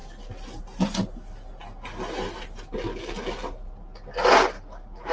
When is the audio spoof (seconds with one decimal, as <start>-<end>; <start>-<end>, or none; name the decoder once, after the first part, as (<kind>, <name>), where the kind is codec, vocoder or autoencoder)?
none